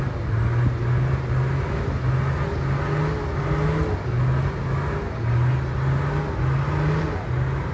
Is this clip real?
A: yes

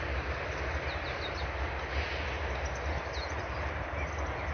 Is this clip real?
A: yes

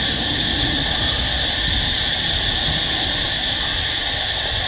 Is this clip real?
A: yes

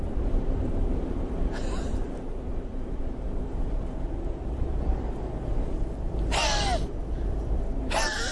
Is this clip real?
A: no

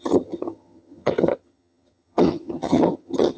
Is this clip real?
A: no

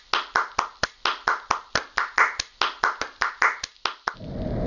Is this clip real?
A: yes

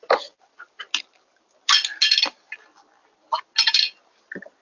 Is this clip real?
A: yes